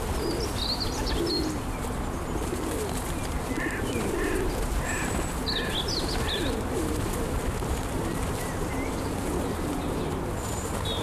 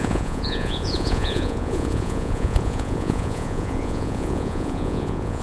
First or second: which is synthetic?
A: second